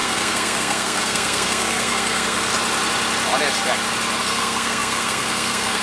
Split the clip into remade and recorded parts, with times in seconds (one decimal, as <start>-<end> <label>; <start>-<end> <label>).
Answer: 0.0-2.5 remade; 2.5-4.2 recorded; 4.2-5.8 remade